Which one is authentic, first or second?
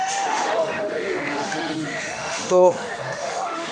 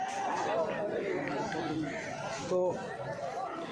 second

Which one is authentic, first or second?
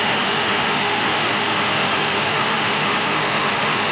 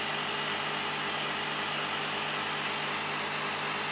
second